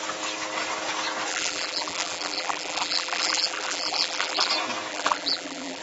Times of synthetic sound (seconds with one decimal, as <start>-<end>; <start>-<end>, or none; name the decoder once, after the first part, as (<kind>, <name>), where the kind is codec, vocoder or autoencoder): 1.3-4.5 (vocoder, BigVGAN v2); 4.9-5.8

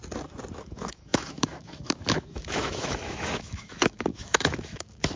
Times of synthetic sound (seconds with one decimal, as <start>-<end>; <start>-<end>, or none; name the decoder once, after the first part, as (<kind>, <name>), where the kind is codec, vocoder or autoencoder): 0.6-5.2 (autoencoder, DAC-VAE)